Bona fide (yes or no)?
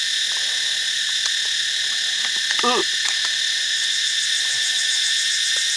yes